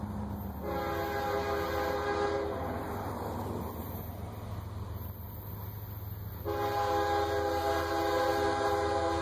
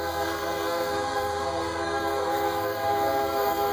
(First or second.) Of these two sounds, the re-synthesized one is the second